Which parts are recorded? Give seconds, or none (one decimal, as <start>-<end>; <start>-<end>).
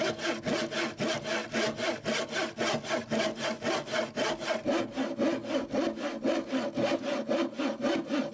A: 0.0-8.3